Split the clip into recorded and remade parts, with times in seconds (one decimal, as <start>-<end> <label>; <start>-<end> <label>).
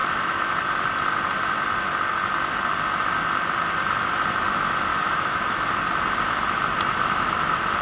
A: 0.0-0.5 remade; 0.5-4.9 recorded; 4.9-5.7 remade; 5.7-7.8 recorded